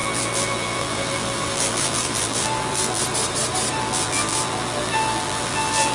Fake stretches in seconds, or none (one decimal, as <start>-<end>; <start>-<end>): 0.0-3.0; 3.8-5.9